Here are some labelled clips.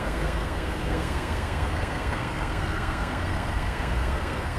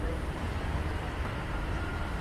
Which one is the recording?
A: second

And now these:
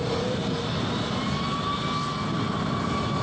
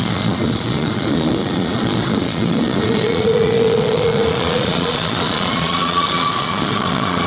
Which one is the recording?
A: first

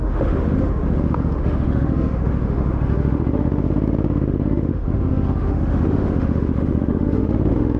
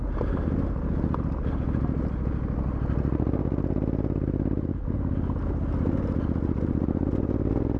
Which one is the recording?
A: second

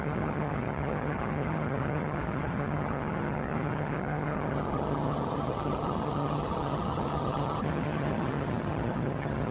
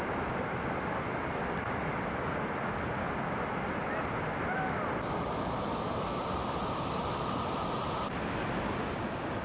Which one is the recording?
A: second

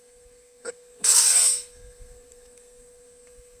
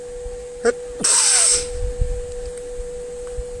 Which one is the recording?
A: second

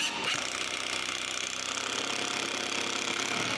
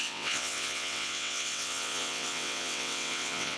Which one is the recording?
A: first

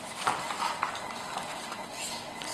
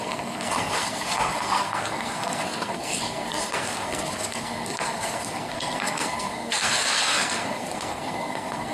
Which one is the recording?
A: first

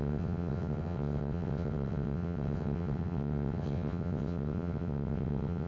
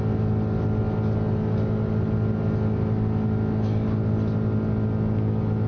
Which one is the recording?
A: second